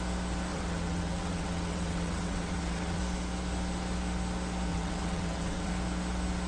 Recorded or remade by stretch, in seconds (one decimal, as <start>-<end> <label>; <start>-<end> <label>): 0.0-0.5 recorded; 0.5-3.0 remade; 3.0-4.7 recorded; 4.7-5.7 remade; 5.7-6.5 recorded